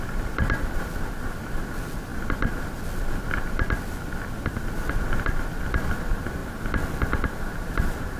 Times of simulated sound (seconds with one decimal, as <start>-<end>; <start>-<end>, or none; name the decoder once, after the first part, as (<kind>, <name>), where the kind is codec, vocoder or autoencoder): 0.0-6.4 (vocoder, BigVGAN v2); 7.4-8.2